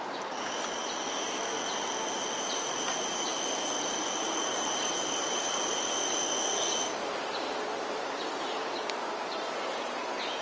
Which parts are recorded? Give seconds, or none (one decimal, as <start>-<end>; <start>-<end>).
1.4-2.1; 3.3-3.8; 5.7-7.8